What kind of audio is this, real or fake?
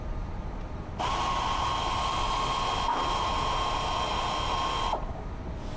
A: real